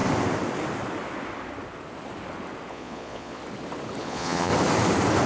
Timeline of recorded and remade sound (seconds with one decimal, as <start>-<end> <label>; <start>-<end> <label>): 0.0-2.7 recorded; 2.7-3.4 remade; 3.4-4.0 recorded; 4.0-4.5 remade; 4.5-5.3 recorded